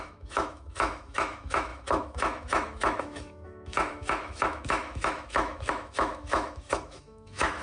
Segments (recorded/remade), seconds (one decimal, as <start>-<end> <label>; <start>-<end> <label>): 0.0-7.6 remade